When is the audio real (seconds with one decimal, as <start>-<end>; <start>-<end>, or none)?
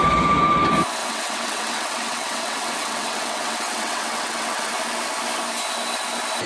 0.0-1.0; 4.7-6.5